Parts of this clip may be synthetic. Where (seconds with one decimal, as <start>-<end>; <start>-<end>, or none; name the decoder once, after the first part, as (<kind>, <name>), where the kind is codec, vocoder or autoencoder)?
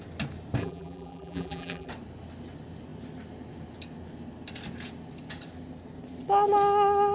0.6-1.9 (vocoder, BigVGAN v2)